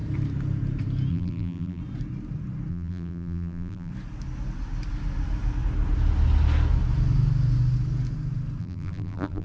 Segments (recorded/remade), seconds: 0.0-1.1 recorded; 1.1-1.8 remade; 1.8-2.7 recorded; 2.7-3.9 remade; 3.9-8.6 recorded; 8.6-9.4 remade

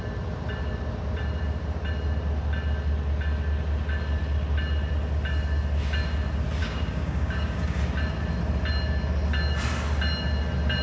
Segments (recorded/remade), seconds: 0.0-6.6 recorded; 6.6-7.8 remade; 7.8-10.8 recorded

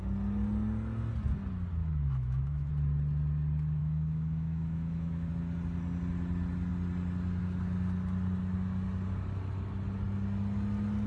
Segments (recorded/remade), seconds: 0.0-1.8 recorded; 1.8-2.7 remade; 2.7-3.8 recorded; 3.8-5.3 remade; 5.3-11.1 recorded

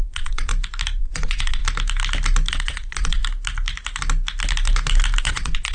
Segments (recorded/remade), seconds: 0.0-0.5 remade; 0.5-1.0 recorded; 1.0-1.6 remade; 1.6-2.5 recorded; 2.5-3.2 remade; 3.2-5.2 recorded; 5.2-5.7 remade

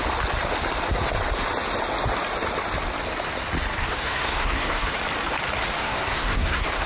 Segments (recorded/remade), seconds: 0.0-3.8 recorded; 3.8-4.9 remade; 4.9-5.8 recorded; 5.8-6.9 remade

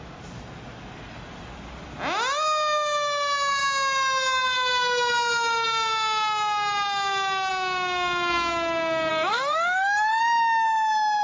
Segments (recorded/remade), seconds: 0.0-9.1 recorded; 9.1-10.2 remade; 10.2-11.2 recorded

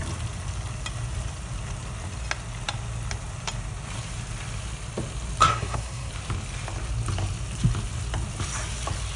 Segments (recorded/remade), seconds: 0.0-5.4 recorded; 5.4-6.1 remade; 6.1-9.2 recorded